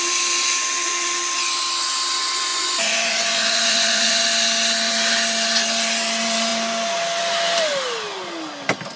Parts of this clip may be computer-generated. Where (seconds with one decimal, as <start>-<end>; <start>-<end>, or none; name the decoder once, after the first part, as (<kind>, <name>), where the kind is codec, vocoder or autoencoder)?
2.5-4.2 (vocoder, Vocos)